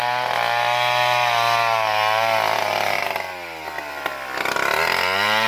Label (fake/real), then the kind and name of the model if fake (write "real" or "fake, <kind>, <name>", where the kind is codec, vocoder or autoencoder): real